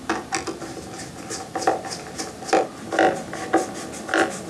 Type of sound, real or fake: real